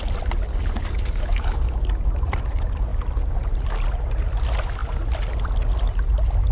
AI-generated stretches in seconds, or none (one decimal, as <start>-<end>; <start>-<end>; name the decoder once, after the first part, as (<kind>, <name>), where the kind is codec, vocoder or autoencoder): 0.5-2.1 (codec, DAC)